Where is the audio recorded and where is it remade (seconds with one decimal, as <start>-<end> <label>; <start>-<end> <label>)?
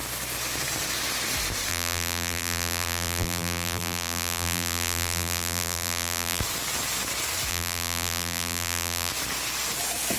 0.0-1.7 recorded; 1.7-6.4 remade; 6.4-7.5 recorded; 7.5-9.1 remade; 9.1-10.2 recorded